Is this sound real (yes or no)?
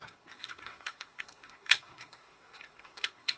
no